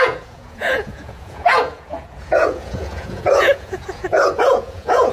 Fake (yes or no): yes